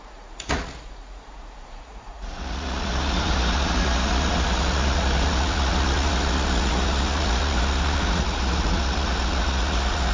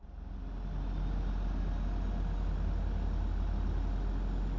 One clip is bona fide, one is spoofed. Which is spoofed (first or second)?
first